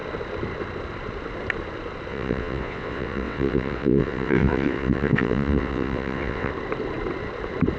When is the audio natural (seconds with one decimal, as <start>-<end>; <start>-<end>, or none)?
0.0-2.1; 6.5-7.8

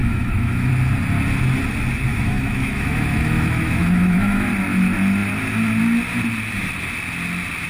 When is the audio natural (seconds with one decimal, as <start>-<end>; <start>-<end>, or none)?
0.7-2.1; 4.5-7.7

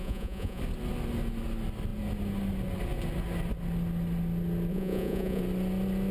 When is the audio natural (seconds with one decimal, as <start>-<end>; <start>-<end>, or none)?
0.6-4.7; 5.4-6.1

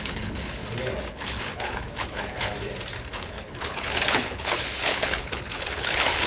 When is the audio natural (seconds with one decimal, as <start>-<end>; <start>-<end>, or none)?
0.6-1.1; 2.5-3.1